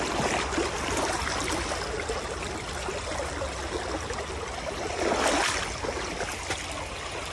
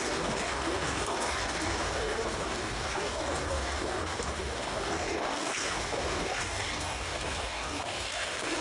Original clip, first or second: first